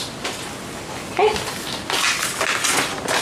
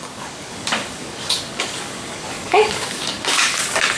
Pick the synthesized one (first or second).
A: second